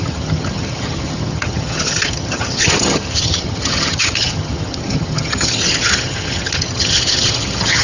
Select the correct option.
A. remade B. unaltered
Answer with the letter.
A